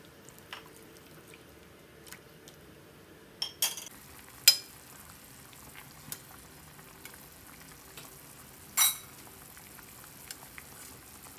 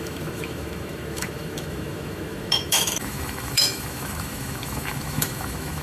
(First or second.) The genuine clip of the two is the first